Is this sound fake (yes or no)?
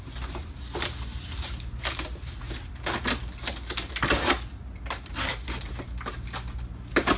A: no